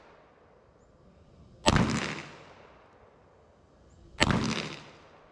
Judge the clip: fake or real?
real